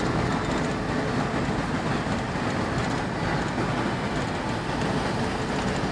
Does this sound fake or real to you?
real